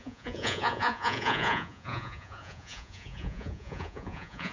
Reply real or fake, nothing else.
fake